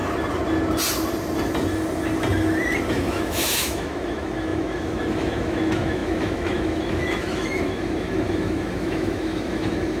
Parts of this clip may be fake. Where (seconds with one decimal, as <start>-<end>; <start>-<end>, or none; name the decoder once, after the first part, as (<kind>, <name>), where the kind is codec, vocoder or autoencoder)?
2.9-10.0 (autoencoder, DAC-VAE)